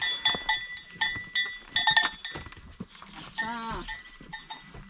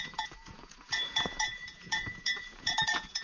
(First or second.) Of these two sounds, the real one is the first